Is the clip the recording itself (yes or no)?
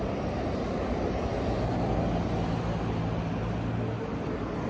yes